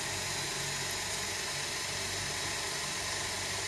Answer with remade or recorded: recorded